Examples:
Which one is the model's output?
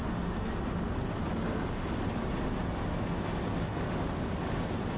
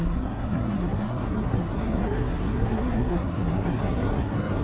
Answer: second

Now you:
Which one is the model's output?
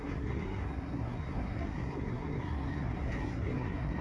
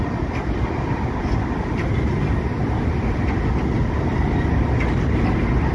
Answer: first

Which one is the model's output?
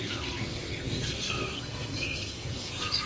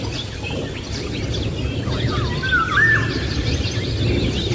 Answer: first